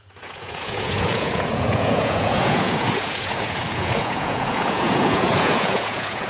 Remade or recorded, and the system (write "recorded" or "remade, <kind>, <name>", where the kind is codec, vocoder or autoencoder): remade, vocoder, Vocos